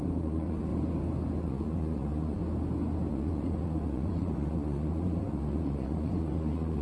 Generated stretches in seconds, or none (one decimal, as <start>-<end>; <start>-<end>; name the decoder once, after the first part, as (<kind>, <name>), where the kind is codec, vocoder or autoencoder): 0.0-0.7 (vocoder, Vocos); 1.4-2.4; 3.1-6.8